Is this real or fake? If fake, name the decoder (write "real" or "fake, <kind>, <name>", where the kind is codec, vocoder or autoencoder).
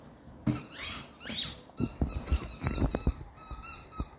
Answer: real